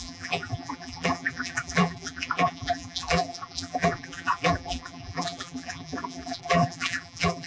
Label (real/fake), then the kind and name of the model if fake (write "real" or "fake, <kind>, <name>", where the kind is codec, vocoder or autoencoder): fake, vocoder, BigVGAN v2